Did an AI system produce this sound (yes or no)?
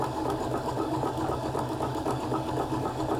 yes